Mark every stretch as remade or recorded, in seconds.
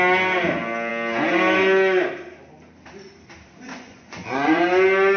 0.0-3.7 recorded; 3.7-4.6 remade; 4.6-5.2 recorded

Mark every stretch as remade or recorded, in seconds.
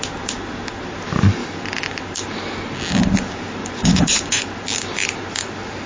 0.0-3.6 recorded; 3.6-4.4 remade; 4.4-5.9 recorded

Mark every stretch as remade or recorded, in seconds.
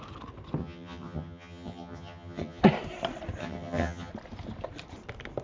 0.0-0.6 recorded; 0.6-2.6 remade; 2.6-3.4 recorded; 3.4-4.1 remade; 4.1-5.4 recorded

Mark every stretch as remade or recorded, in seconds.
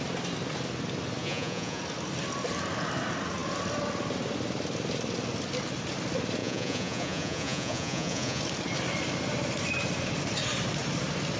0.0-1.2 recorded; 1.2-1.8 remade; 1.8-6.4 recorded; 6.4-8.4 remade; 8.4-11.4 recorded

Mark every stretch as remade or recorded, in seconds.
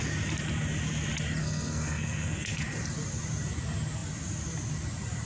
0.0-1.4 recorded; 1.4-2.6 remade; 2.6-5.3 recorded